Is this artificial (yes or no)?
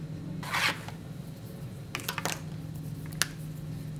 no